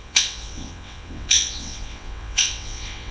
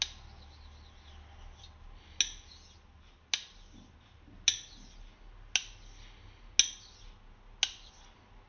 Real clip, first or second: second